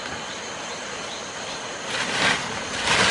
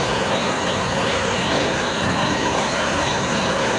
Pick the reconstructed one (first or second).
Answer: second